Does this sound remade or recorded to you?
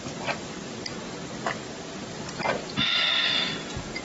recorded